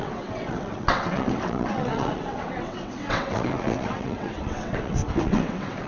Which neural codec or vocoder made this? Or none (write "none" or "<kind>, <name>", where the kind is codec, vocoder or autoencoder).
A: vocoder, WaveNeXt